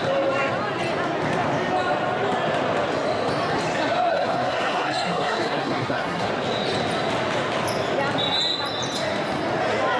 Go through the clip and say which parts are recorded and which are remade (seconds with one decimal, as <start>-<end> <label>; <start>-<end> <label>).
0.0-4.1 recorded; 4.1-6.3 remade; 6.3-10.0 recorded